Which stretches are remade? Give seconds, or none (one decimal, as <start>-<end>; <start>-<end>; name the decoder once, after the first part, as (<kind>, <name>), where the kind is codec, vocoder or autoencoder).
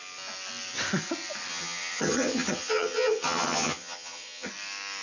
1.5-4.5 (vocoder, HiFi-GAN)